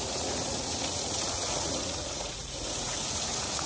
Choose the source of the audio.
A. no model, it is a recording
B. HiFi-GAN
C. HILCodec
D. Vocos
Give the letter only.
D